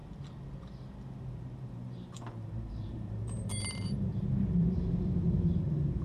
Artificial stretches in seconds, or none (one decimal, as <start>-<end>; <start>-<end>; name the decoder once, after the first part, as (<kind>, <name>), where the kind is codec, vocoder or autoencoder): 1.2-6.0 (vocoder, BigVGAN v2)